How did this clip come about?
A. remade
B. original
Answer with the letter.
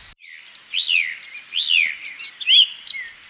B